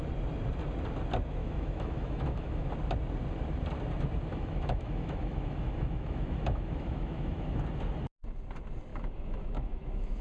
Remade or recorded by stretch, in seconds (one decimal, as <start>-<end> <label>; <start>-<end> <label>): 0.0-1.4 recorded; 1.4-2.7 remade; 2.7-4.3 recorded; 4.3-7.6 remade; 7.6-8.9 recorded; 8.9-10.2 remade